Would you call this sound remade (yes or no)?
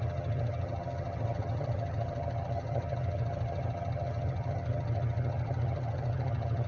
yes